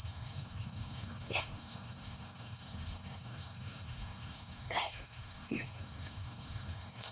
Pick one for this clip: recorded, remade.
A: remade